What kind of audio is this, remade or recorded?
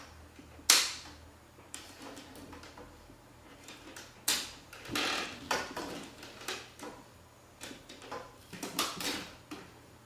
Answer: recorded